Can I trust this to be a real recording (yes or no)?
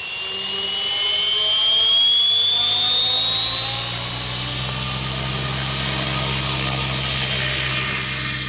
yes